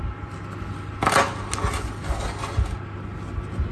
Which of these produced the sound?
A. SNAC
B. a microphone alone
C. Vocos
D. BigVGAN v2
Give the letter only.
B